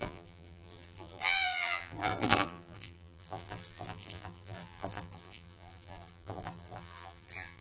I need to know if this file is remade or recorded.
remade